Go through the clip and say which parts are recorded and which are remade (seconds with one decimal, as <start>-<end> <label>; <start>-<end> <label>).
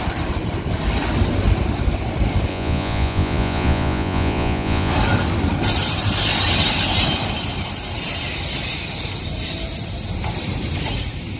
0.0-2.5 recorded; 2.5-4.9 remade; 4.9-11.4 recorded